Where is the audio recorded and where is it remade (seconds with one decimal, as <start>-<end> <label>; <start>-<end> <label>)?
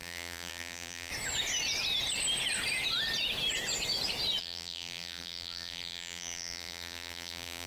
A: 0.0-1.1 remade; 1.1-4.4 recorded; 4.4-7.7 remade